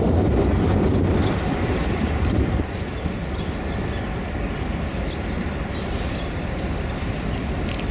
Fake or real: fake